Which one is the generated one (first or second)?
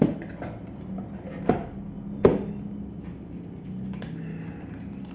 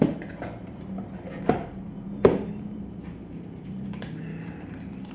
second